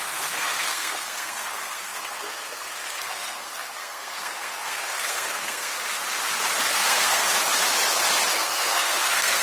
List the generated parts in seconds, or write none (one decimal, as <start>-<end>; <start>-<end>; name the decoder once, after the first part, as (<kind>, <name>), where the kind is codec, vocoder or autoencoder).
0.0-5.7 (codec, SNAC); 6.7-7.2; 8.3-9.4